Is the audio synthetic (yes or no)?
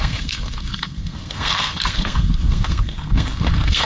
yes